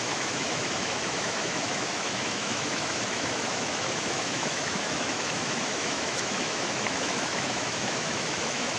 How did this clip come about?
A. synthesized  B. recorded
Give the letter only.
A